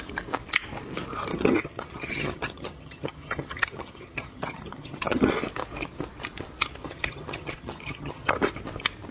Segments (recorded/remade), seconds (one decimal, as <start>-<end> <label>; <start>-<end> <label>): 0.0-1.3 recorded; 1.3-5.3 remade; 5.3-6.8 recorded; 6.8-8.3 remade; 8.3-9.1 recorded